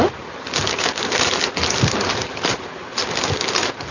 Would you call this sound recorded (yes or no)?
yes